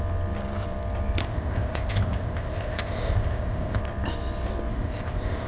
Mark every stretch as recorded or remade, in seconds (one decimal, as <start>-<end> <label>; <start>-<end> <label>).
0.0-1.2 recorded; 1.2-3.8 remade; 3.8-4.7 recorded; 4.7-5.5 remade